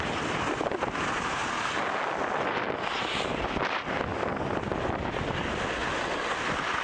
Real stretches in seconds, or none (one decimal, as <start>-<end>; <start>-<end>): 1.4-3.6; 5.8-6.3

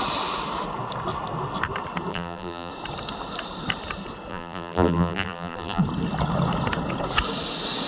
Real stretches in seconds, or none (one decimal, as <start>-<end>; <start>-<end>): 0.0-2.1; 2.7-4.3; 5.8-7.9

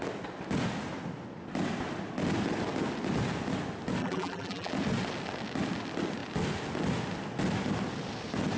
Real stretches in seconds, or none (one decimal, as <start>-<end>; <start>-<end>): 0.0-4.0; 4.7-8.6

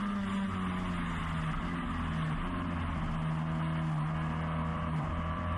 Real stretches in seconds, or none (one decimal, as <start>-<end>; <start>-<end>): 0.0-4.7